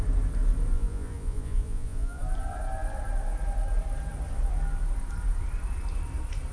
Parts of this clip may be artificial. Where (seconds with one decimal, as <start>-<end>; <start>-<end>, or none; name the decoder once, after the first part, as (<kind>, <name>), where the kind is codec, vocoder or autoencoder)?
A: 0.7-2.2 (vocoder, Vocos)